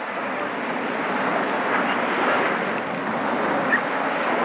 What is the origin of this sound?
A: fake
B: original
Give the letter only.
B